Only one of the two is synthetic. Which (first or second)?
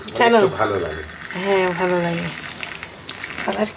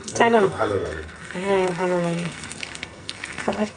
second